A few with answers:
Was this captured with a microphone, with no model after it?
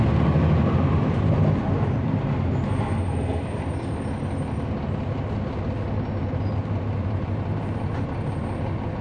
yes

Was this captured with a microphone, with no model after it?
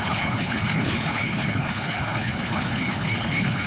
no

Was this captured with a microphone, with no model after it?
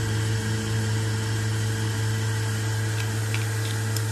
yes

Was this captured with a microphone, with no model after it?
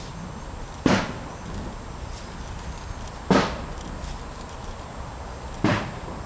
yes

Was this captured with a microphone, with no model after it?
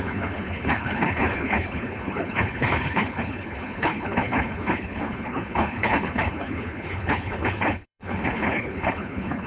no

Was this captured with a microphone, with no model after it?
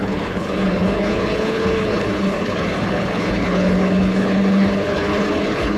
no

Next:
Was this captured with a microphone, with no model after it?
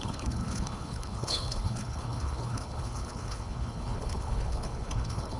no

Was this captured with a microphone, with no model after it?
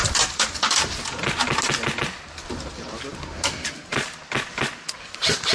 yes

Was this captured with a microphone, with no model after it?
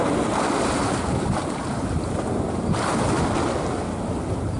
yes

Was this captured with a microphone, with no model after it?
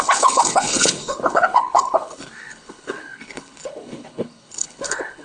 no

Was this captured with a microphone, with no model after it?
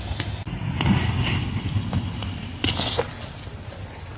yes